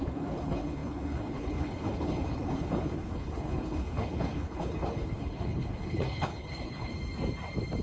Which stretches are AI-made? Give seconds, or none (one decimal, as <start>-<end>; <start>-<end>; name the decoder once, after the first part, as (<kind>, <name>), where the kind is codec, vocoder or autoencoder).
0.0-6.9 (codec, HILCodec)